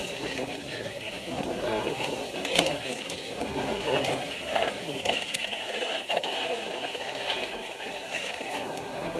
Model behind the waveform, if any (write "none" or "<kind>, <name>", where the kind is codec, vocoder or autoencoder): codec, SNAC